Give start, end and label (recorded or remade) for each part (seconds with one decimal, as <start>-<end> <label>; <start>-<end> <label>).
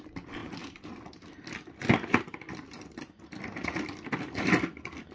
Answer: 0.0-5.1 recorded